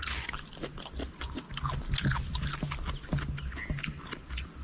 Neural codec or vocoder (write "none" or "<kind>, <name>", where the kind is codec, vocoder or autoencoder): none